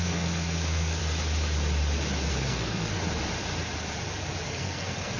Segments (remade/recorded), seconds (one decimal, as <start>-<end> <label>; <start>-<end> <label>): 0.0-1.0 remade; 1.0-2.3 recorded; 2.3-3.0 remade; 3.0-4.5 recorded; 4.5-5.2 remade